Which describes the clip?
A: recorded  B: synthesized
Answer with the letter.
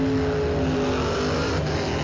A